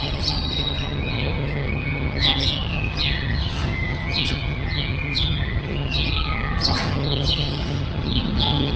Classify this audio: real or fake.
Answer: fake